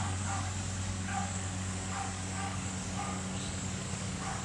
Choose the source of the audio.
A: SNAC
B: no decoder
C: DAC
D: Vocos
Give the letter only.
C